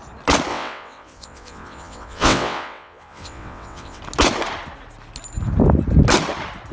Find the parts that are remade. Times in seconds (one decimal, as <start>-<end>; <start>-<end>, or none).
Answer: 0.5-4.0

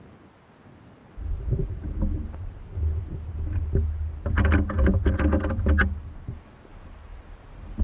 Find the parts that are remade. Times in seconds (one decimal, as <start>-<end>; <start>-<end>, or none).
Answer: none